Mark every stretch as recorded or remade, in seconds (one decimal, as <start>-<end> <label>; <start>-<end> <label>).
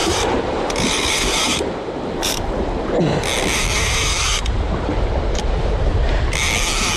0.0-3.0 remade; 3.0-4.2 recorded; 4.2-5.9 remade; 5.9-7.0 recorded